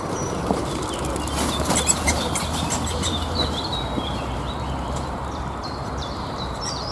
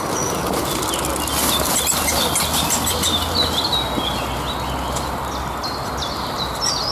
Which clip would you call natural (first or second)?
second